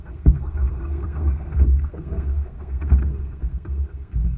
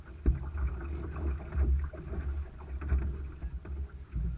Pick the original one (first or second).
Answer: second